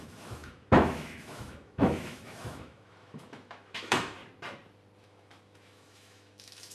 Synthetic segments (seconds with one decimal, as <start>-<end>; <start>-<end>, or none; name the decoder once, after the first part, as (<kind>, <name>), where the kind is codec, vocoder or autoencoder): 0.0-4.2 (autoencoder, DAC-VAE); 5.0-6.7